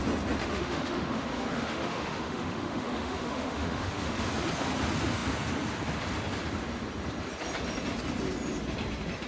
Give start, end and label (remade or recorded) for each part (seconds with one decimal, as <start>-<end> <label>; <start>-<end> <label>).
0.0-0.4 recorded; 0.4-4.3 remade; 4.3-9.3 recorded